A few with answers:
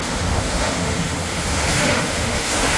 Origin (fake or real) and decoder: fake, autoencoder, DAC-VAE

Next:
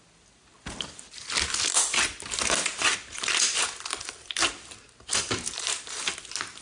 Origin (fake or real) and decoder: real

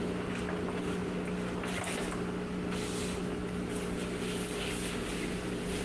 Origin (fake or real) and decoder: real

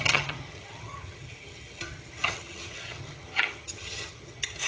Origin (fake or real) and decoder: fake, vocoder, HiFi-GAN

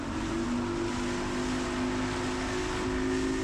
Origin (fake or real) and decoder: real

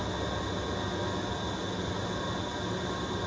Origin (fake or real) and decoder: real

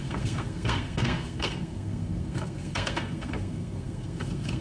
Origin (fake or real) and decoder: fake, codec, SNAC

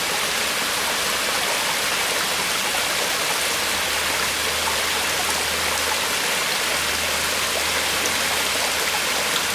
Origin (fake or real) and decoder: real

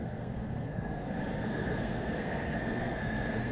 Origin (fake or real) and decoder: fake, codec, SNAC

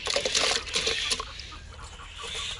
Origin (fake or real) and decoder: real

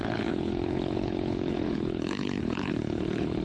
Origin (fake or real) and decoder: fake, codec, HILCodec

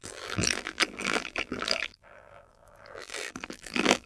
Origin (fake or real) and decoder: fake, vocoder, BigVGAN v2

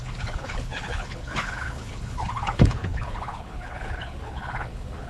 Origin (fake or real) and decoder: fake, codec, HILCodec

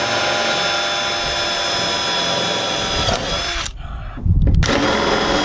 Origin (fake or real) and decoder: real